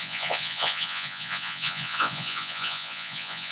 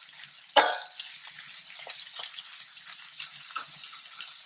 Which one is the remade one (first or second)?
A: first